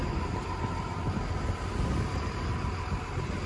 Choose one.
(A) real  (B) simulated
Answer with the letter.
A